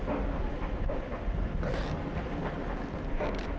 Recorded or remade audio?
recorded